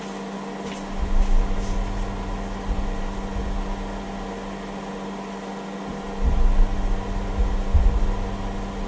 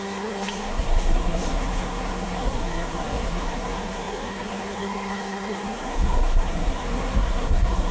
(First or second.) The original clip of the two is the first